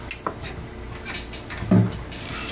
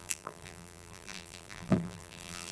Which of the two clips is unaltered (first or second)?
first